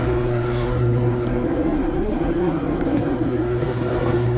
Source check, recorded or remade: remade